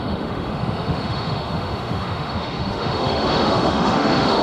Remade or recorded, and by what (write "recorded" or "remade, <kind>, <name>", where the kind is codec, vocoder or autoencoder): remade, autoencoder, DAC-VAE